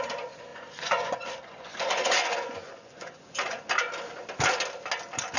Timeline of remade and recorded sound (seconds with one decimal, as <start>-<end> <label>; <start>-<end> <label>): 0.0-0.5 recorded; 0.5-3.7 remade; 3.7-5.4 recorded